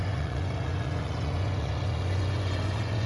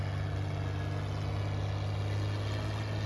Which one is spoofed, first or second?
first